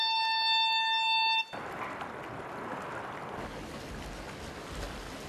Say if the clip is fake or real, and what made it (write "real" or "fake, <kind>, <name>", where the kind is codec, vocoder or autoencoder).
real